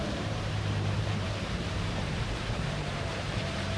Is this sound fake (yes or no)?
yes